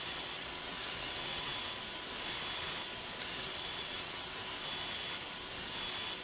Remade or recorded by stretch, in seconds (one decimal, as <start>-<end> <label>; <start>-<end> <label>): 0.0-1.5 remade; 1.5-3.3 recorded; 3.3-4.3 remade; 4.3-6.2 recorded